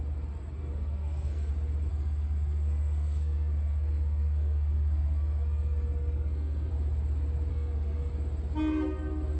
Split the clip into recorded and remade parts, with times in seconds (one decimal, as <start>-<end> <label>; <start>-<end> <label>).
0.0-0.6 recorded; 0.6-1.5 remade; 1.5-1.9 recorded; 1.9-6.7 remade; 6.7-7.5 recorded; 7.5-8.1 remade; 8.1-9.4 recorded